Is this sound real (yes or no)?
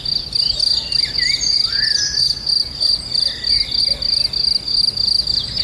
yes